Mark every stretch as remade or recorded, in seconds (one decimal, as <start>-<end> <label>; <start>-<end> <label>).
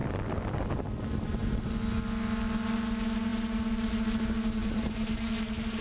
0.0-4.6 recorded; 4.6-5.3 remade; 5.3-5.8 recorded